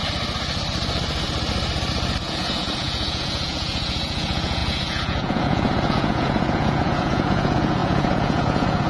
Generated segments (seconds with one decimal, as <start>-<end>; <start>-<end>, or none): 2.2-8.9